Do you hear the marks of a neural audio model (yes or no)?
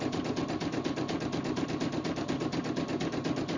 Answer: no